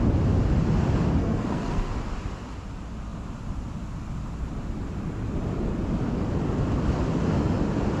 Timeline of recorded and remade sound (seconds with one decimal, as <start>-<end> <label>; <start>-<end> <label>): 0.0-1.2 recorded; 1.2-1.9 remade; 1.9-8.0 recorded